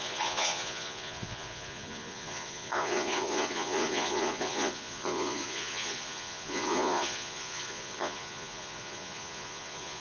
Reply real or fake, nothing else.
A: fake